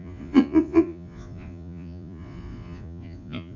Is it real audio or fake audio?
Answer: fake